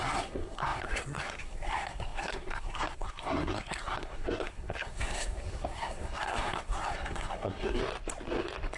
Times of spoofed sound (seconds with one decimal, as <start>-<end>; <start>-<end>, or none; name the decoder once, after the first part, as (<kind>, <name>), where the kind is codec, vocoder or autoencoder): 0.0-7.8 (codec, SNAC)